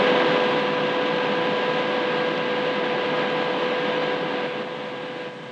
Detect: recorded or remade recorded